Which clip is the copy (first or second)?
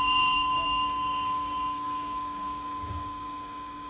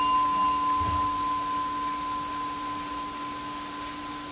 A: first